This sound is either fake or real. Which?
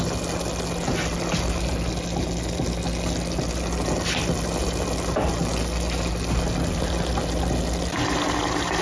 real